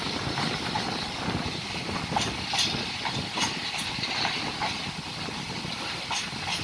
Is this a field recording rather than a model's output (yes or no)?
yes